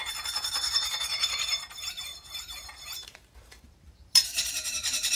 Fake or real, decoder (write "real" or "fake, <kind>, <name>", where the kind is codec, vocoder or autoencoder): fake, vocoder, BigVGAN v2